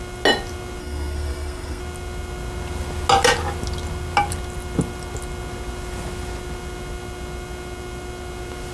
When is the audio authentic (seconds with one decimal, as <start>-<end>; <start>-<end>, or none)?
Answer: 0.0-0.8; 1.8-8.7